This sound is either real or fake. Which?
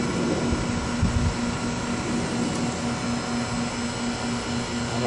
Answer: real